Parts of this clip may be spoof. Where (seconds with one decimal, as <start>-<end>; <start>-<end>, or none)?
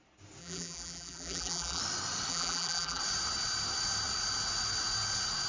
0.4-1.8; 2.3-3.0